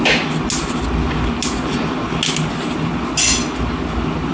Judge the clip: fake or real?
real